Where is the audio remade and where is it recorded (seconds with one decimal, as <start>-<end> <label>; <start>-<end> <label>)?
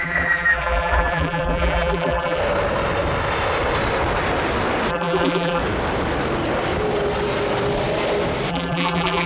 0.0-2.4 remade; 2.4-4.9 recorded; 4.9-5.6 remade; 5.6-8.5 recorded; 8.5-9.3 remade